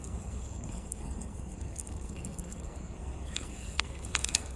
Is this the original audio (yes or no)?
no